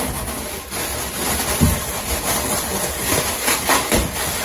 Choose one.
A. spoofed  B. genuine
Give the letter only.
B